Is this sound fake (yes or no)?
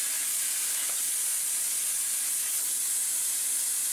no